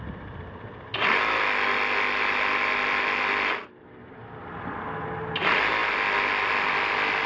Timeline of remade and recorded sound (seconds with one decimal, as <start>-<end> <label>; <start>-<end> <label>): 0.0-7.3 recorded